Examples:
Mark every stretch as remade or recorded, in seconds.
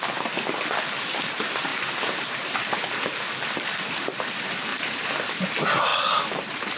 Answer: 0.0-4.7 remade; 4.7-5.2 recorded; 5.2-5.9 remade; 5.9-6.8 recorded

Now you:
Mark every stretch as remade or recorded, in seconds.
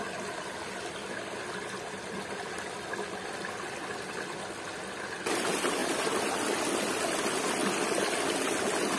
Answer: 0.0-5.8 recorded; 5.8-6.3 remade; 6.3-9.0 recorded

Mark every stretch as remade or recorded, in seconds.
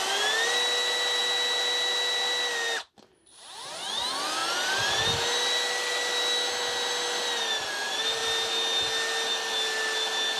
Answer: 0.0-10.4 recorded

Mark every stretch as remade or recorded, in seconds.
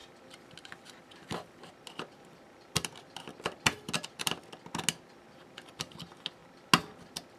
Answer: 0.0-3.3 remade; 3.3-5.3 recorded; 5.3-6.4 remade; 6.4-7.4 recorded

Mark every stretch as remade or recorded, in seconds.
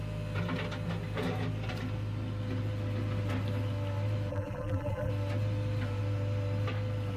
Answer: 0.0-4.3 recorded; 4.3-5.1 remade; 5.1-7.2 recorded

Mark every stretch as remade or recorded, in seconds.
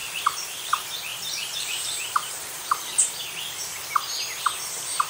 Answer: 0.0-0.7 remade; 0.7-1.1 recorded; 1.1-3.0 remade; 3.0-5.1 recorded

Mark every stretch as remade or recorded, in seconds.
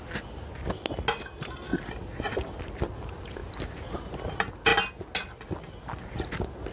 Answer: 0.0-3.4 recorded; 3.4-4.0 remade; 4.0-6.7 recorded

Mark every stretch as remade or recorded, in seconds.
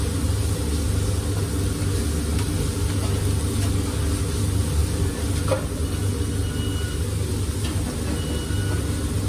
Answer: 0.0-4.8 recorded; 4.8-5.8 remade; 5.8-9.3 recorded